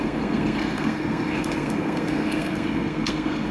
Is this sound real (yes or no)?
no